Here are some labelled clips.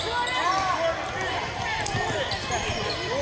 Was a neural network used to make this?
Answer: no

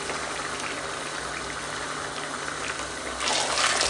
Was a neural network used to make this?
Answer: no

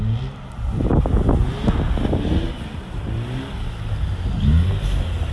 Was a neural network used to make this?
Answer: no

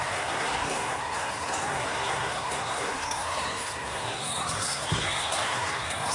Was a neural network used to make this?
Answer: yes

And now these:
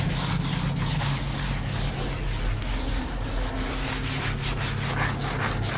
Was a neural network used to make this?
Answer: no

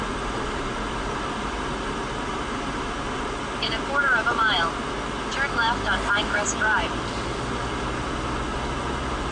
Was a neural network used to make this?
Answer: no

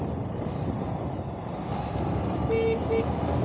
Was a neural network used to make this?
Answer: no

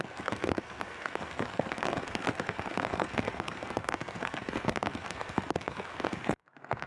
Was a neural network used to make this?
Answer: yes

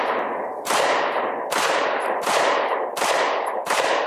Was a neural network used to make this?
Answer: no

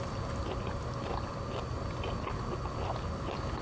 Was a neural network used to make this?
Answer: no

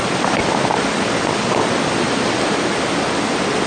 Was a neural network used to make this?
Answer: no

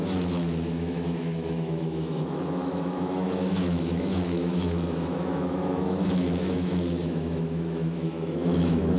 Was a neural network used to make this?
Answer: yes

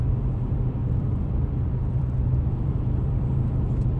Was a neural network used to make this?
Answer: yes